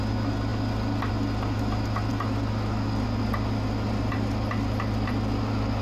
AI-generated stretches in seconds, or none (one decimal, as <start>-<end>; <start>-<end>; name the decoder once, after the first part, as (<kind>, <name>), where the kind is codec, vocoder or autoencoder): none